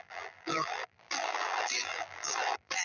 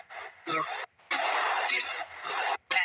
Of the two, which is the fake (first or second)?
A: first